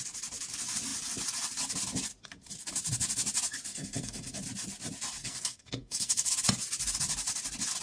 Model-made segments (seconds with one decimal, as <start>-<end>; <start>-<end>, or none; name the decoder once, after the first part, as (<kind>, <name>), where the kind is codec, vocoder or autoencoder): 3.7-4.4 (codec, SNAC); 5.2-6.3